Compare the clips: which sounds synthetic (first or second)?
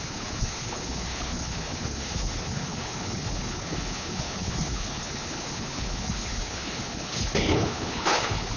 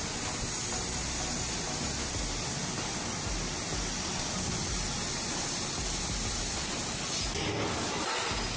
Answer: first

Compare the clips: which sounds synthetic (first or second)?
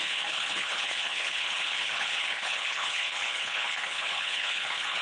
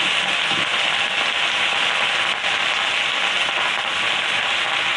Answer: first